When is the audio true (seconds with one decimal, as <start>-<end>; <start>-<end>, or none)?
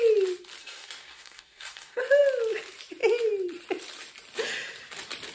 0.0-0.6; 2.0-5.3